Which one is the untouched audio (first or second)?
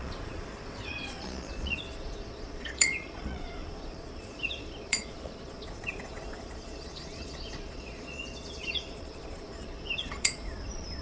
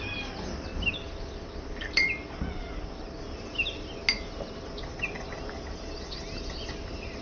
second